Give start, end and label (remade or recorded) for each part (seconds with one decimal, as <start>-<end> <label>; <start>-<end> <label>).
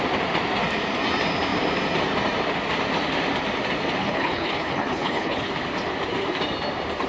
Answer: 0.0-4.0 recorded; 4.0-5.5 remade; 5.5-7.1 recorded